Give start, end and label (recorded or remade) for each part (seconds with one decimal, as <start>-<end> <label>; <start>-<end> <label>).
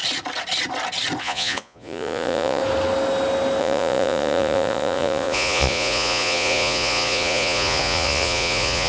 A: 0.0-1.2 recorded; 1.2-2.6 remade; 2.6-3.6 recorded; 3.6-8.9 remade